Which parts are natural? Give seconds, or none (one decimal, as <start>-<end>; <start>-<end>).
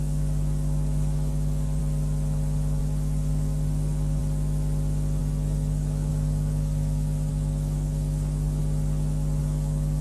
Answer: 1.8-2.8; 4.2-5.2; 8.6-9.4